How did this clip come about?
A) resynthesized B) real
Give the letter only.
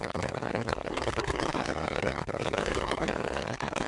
A